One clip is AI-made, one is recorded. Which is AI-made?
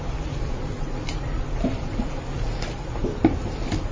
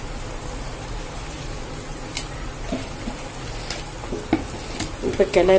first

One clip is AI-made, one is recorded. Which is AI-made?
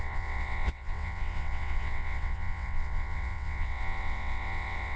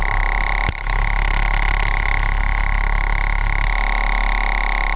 first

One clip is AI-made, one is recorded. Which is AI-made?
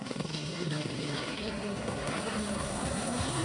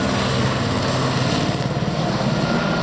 first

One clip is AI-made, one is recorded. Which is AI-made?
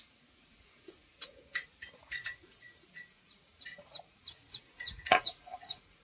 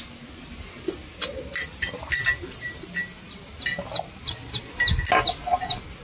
first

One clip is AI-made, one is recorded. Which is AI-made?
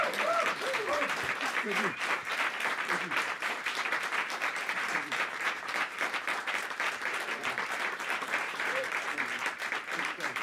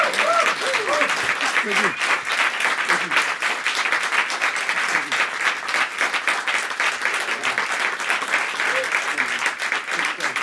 first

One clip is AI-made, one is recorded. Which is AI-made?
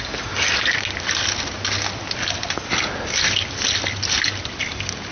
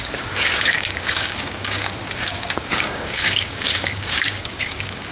second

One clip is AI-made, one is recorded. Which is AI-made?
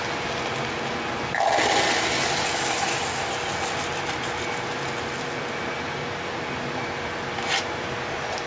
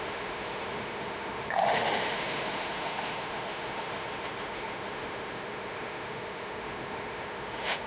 second